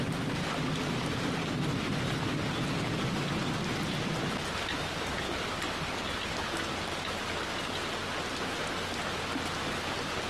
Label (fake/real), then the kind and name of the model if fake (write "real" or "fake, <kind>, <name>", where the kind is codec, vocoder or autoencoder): real